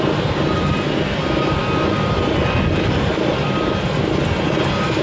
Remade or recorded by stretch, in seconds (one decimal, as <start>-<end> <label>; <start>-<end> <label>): 0.0-5.0 recorded